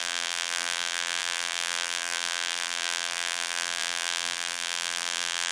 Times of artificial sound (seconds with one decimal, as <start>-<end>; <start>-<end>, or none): 0.0-5.5